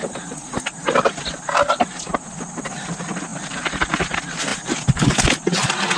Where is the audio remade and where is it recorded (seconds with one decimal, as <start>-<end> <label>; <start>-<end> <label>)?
0.0-3.3 recorded; 3.3-4.0 remade; 4.0-4.5 recorded; 4.5-5.3 remade; 5.3-6.0 recorded